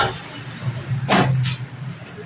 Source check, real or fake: real